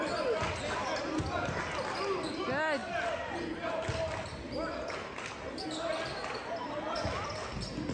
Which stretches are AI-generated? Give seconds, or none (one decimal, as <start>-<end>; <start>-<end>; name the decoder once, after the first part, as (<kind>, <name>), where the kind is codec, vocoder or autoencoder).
none